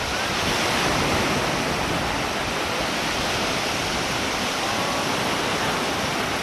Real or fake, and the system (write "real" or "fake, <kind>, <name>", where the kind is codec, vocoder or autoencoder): real